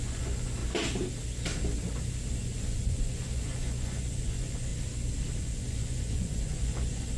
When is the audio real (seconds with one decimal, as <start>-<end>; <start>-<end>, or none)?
0.6-2.3; 4.7-5.4

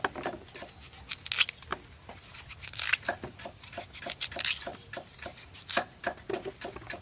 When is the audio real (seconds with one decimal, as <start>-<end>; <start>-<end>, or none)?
0.0-4.7; 6.0-7.0